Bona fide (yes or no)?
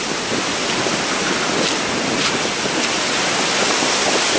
yes